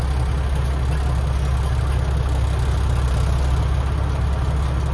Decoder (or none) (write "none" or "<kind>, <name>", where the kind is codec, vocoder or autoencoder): none